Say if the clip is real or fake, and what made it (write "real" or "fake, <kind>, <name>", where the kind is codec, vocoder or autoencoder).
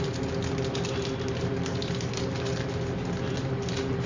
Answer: real